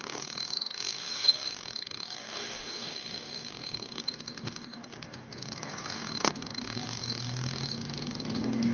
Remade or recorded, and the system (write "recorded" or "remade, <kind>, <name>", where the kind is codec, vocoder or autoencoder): remade, codec, DAC